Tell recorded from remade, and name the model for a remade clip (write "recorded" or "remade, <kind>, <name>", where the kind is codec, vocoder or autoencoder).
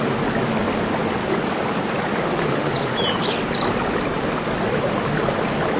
recorded